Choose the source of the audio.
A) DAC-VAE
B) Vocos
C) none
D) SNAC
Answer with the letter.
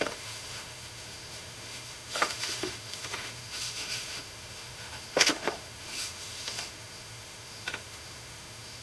A